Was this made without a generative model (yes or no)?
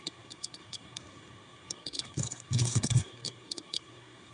no